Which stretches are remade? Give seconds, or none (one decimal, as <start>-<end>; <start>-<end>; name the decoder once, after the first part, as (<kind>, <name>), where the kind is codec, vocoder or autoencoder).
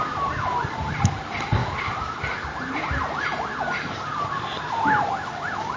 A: none